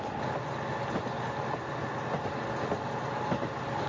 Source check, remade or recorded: recorded